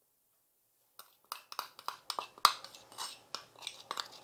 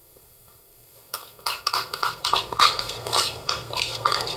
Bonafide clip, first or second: first